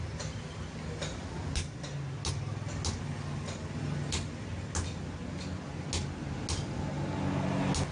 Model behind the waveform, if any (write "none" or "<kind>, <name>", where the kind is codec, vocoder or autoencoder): none